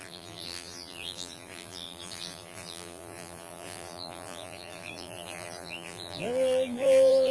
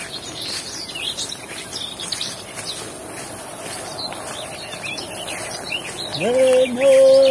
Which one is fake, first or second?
first